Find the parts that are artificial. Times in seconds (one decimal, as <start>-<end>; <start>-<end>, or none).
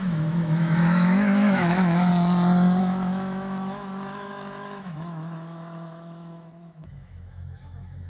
0.0-2.1; 2.8-8.1